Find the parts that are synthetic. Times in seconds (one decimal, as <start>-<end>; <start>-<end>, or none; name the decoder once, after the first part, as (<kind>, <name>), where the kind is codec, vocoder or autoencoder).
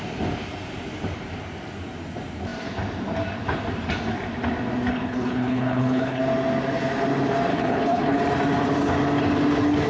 4.9-6.2 (codec, HILCodec); 7.5-8.2